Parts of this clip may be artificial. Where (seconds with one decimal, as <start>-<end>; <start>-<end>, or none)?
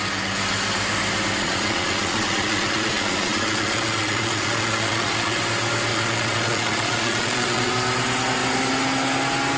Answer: 1.4-5.4; 5.9-7.7